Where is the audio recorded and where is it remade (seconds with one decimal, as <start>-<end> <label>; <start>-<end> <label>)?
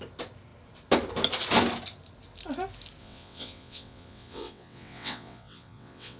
0.0-3.0 recorded; 3.0-6.2 remade